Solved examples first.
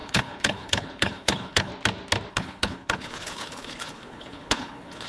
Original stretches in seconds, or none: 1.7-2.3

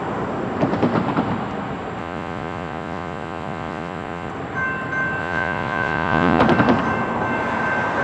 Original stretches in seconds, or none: 0.0-2.0; 4.3-5.2; 6.4-8.0

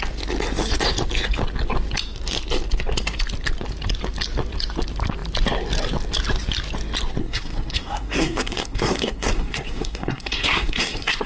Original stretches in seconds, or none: 0.0-7.2

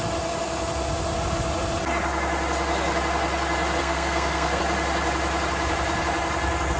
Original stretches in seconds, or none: 0.0-3.8; 4.6-6.8